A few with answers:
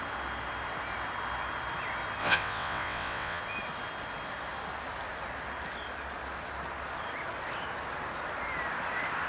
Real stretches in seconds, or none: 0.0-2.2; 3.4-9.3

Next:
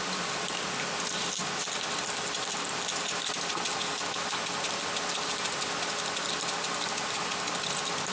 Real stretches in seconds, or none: 0.0-8.1

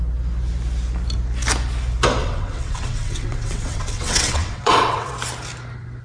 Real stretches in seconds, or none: 0.0-2.2; 5.1-6.0

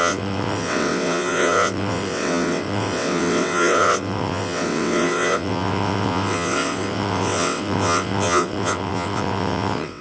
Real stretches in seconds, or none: none